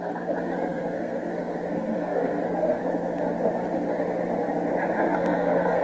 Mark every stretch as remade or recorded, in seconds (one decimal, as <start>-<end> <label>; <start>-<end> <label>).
0.0-2.8 remade; 2.8-5.0 recorded; 5.0-5.8 remade